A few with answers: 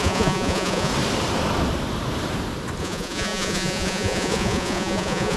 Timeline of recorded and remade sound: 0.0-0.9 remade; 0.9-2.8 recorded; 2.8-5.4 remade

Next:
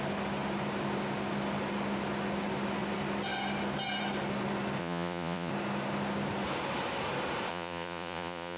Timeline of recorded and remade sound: 0.0-4.8 recorded; 4.8-5.5 remade; 5.5-7.5 recorded; 7.5-8.6 remade

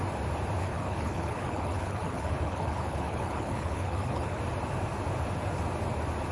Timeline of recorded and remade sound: 0.0-0.6 recorded; 0.6-4.4 remade; 4.4-6.3 recorded

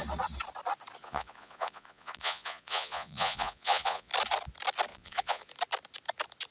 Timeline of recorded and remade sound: 0.0-1.0 recorded; 1.0-4.1 remade; 4.1-4.9 recorded; 4.9-5.5 remade; 5.5-6.5 recorded

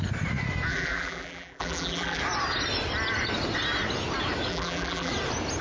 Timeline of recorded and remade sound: 0.0-0.7 recorded; 0.7-2.2 remade; 2.2-4.5 recorded; 4.5-5.1 remade; 5.1-5.6 recorded

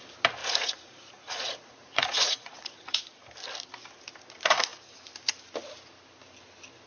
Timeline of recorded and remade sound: 0.0-0.4 recorded; 0.4-3.0 remade; 3.0-6.9 recorded

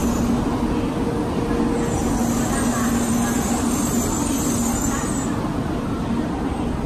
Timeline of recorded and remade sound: 0.0-6.9 recorded

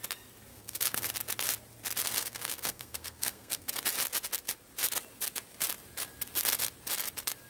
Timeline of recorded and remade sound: 0.0-0.5 recorded; 0.5-1.1 remade; 1.1-2.1 recorded; 2.1-3.7 remade; 3.7-7.5 recorded